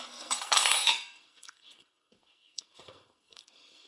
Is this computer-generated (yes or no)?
yes